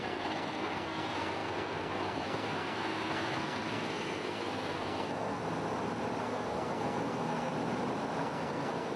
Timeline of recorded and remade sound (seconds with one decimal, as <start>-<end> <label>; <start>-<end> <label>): 0.0-5.4 remade; 5.4-6.2 recorded; 6.2-7.5 remade; 7.5-8.2 recorded; 8.2-9.0 remade